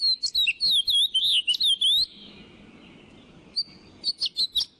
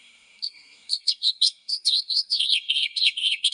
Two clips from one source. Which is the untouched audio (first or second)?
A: first